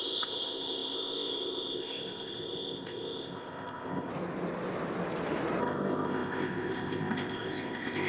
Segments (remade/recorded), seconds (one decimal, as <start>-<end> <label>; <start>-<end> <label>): 0.0-4.1 remade; 4.1-5.6 recorded; 5.6-8.1 remade